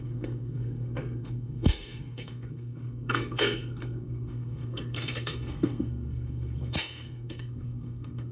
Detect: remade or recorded remade